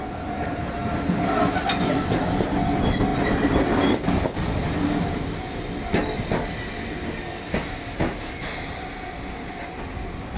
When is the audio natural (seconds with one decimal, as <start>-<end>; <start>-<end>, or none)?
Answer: 0.0-10.4